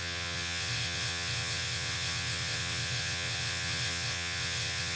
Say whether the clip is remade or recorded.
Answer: remade